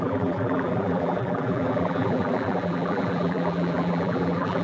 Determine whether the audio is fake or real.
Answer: fake